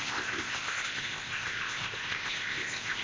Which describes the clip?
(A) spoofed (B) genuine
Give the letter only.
A